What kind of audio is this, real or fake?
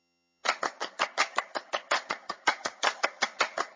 fake